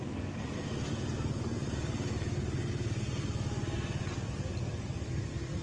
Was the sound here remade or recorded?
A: recorded